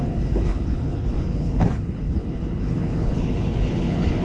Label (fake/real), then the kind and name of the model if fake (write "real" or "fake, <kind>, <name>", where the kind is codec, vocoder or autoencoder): fake, codec, HILCodec